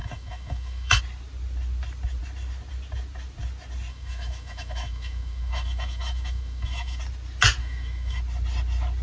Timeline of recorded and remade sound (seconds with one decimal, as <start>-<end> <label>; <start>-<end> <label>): 0.0-1.0 remade; 1.0-3.9 recorded; 3.9-7.0 remade; 7.0-7.6 recorded; 7.6-8.2 remade; 8.2-9.0 recorded